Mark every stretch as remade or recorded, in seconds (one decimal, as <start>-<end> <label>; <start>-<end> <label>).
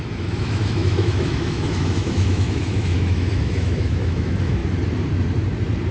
0.0-4.6 remade; 4.6-5.9 recorded